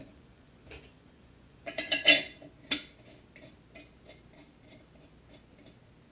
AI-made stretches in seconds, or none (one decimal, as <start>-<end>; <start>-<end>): 0.0-2.1